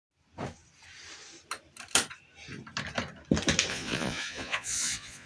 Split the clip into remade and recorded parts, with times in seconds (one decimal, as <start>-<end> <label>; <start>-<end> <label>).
0.0-3.7 recorded; 3.7-5.3 remade